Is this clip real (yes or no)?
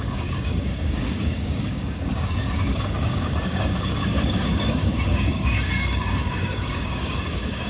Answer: no